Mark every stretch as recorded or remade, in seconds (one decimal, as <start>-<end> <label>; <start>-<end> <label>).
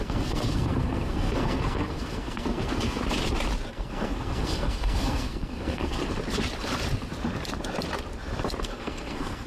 0.0-3.0 remade; 3.0-3.7 recorded; 3.7-6.0 remade; 6.0-8.6 recorded; 8.6-9.5 remade